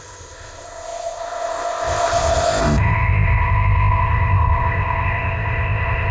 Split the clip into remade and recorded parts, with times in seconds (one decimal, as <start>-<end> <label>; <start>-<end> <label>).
0.0-6.1 remade